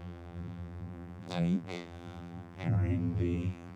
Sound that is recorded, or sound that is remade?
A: remade